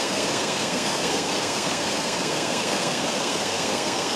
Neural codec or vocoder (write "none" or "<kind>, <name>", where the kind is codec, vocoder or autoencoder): codec, SNAC